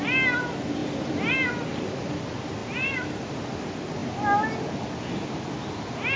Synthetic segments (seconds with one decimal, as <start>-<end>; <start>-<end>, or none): none